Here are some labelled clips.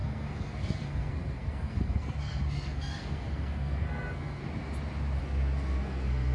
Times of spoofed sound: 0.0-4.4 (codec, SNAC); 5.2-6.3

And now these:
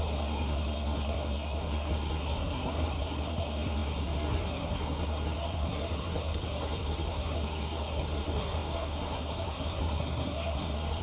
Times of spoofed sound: 0.0-11.0 (codec, SNAC)

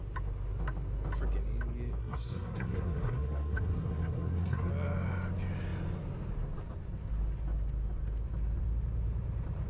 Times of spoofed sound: 2.0-4.7 (codec, SNAC)